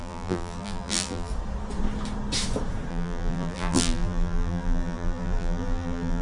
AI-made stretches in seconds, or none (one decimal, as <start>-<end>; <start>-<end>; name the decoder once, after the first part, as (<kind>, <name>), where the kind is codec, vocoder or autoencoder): 0.0-1.3 (vocoder, BigVGAN v2); 2.9-6.2